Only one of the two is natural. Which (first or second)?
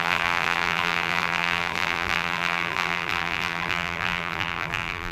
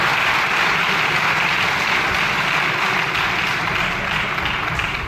second